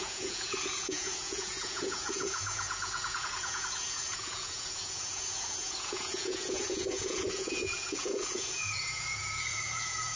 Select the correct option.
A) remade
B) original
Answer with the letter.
A